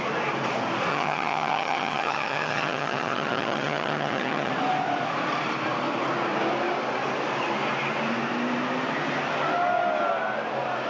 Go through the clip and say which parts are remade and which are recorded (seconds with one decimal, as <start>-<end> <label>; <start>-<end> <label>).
0.0-0.9 recorded; 0.9-4.5 remade; 4.5-10.9 recorded